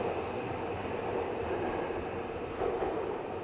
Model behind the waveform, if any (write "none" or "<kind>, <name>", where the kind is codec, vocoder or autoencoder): none